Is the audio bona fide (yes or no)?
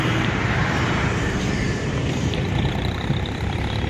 no